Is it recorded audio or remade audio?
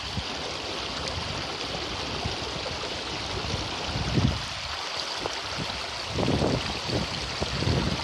recorded